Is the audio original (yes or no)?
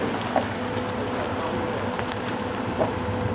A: yes